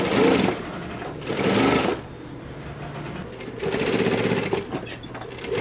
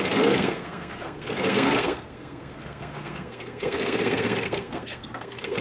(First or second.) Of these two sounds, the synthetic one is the second